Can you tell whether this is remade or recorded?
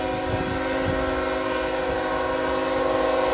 recorded